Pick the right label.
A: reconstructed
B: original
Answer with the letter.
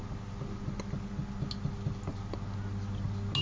B